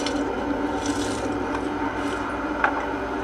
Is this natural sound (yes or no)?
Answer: yes